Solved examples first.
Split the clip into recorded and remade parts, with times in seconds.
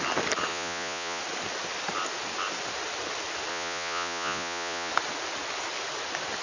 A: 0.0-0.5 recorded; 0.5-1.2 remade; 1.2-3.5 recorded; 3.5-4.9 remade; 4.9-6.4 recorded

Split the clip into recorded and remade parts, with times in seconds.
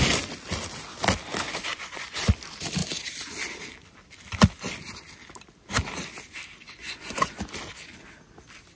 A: 0.0-1.7 recorded; 1.7-2.2 remade; 2.2-6.8 recorded; 6.8-7.4 remade; 7.4-8.8 recorded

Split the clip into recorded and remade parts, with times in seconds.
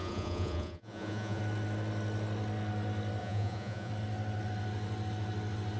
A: 0.0-1.4 remade; 1.4-3.2 recorded; 3.2-3.9 remade; 3.9-5.8 recorded